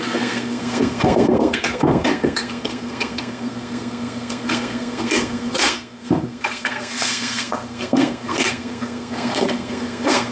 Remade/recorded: remade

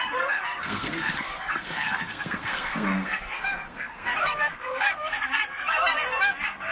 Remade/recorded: remade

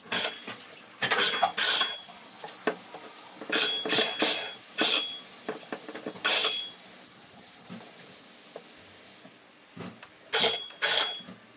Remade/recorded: recorded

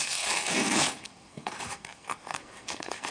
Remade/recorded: remade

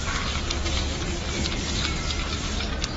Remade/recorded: recorded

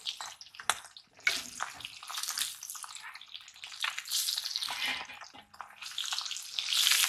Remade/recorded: recorded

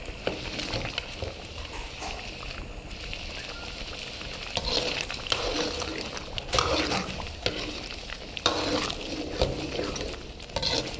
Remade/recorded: recorded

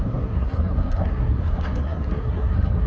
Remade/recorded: remade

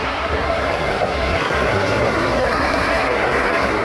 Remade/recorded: remade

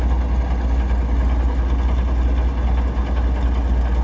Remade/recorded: recorded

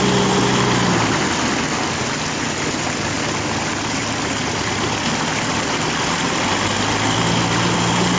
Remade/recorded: recorded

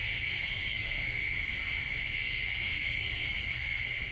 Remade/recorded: remade